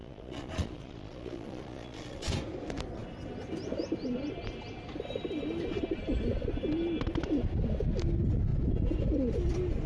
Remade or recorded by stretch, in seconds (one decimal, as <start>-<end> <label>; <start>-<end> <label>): 0.0-2.3 remade; 2.3-9.9 recorded